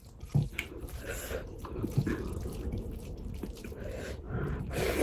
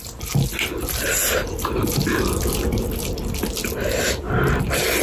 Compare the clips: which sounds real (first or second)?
second